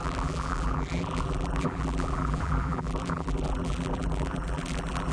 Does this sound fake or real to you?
fake